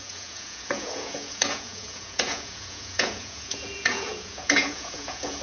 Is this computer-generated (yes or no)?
yes